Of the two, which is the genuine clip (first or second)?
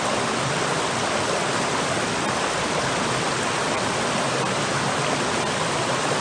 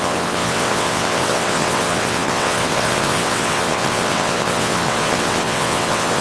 first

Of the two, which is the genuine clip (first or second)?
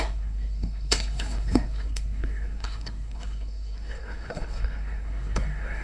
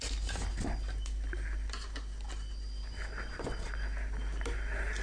second